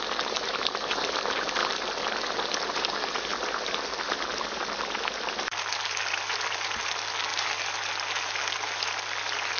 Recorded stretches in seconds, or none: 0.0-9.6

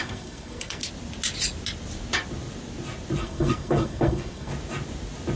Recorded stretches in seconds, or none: 0.8-3.2; 4.5-5.4

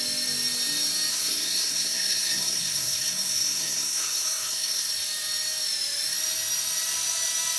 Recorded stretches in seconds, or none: 0.0-1.1; 4.9-7.6

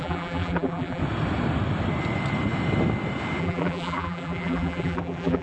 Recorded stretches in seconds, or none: 1.0-3.4

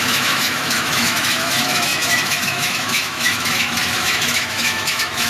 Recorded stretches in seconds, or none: none

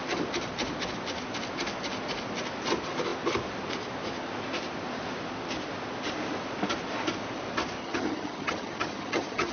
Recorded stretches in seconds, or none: 0.0-7.8